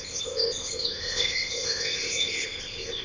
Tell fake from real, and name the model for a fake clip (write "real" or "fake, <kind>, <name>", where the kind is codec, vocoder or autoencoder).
fake, codec, ZipCodec